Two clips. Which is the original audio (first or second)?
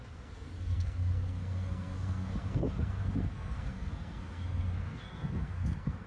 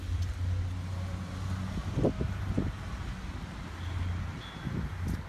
second